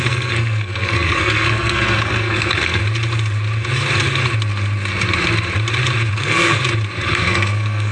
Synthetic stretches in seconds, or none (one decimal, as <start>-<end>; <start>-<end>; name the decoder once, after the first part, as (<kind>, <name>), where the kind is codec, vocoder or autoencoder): 0.0-2.8 (codec, SNAC); 6.1-6.6; 7.1-7.9